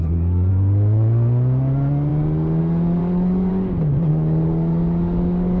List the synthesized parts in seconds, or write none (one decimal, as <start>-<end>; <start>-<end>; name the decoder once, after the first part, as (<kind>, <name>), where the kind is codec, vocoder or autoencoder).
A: 0.0-0.5 (codec, DAC); 3.0-3.5; 4.1-5.6